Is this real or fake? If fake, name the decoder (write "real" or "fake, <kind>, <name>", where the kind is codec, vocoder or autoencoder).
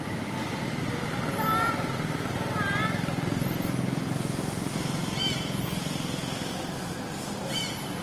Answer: real